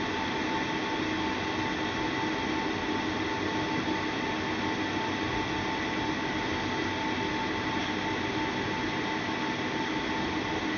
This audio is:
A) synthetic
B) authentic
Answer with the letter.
B